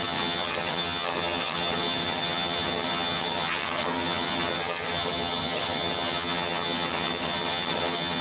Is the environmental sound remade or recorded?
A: remade